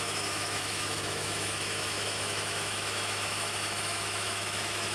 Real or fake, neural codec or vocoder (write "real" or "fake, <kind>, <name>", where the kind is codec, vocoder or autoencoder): fake, autoencoder, DAC-VAE